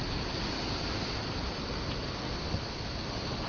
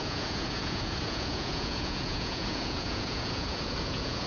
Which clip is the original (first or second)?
first